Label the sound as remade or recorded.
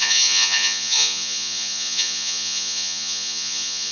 remade